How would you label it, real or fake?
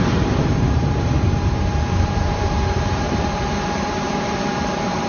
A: fake